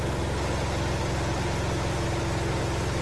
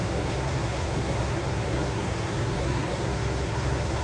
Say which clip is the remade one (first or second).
second